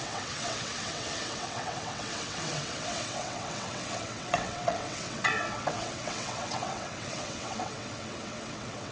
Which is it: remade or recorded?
remade